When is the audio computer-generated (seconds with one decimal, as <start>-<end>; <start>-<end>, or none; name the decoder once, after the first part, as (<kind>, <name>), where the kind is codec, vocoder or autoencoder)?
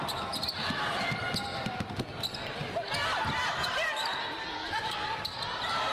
4.6-5.4 (codec, DAC)